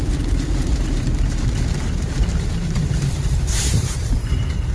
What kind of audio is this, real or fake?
fake